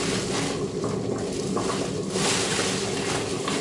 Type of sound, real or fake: real